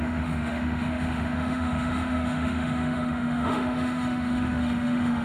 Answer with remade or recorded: remade